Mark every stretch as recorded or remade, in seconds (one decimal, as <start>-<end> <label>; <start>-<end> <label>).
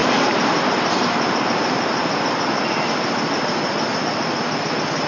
0.0-2.6 remade; 2.6-5.1 recorded